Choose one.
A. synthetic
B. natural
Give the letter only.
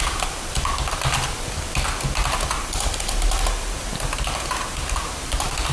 A